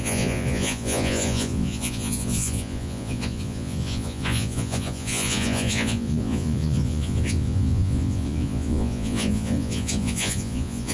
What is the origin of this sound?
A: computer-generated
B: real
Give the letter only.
A